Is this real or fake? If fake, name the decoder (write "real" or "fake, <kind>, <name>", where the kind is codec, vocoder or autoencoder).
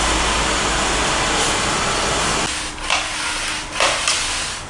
real